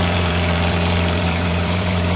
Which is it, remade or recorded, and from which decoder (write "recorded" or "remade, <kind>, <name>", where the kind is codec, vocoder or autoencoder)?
remade, vocoder, BigVGAN v2